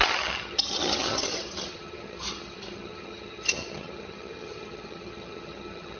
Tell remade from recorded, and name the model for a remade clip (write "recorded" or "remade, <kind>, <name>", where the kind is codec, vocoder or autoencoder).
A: remade, vocoder, HiFi-GAN